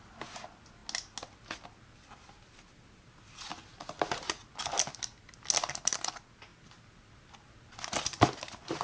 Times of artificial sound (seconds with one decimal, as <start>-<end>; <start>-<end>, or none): none